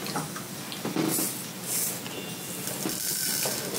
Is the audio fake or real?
real